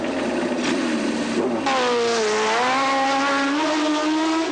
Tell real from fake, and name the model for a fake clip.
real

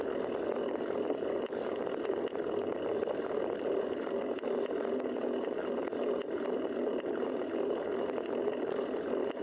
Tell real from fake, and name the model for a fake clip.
real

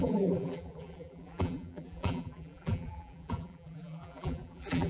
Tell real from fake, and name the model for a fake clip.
fake, vocoder, BigVGAN v2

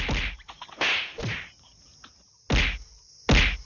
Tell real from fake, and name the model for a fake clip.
real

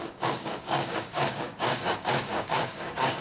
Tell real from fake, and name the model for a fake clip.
fake, codec, DAC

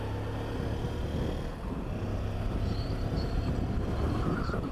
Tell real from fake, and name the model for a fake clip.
real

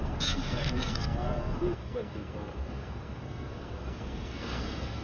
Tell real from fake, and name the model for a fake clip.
fake, codec, SNAC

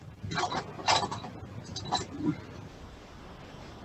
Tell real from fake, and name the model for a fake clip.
fake, vocoder, BigVGAN v2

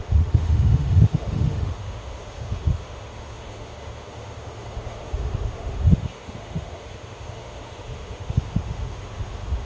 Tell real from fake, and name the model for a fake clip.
fake, autoencoder, DAC-VAE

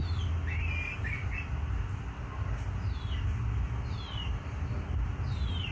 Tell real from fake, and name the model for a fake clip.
real